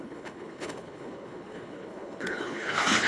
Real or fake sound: fake